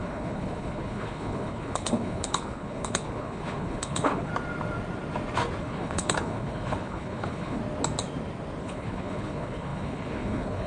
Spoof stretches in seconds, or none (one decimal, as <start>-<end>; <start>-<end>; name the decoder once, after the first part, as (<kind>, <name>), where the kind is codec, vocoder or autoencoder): 0.0-4.3 (codec, HILCodec); 5.6-7.6; 8.6-10.7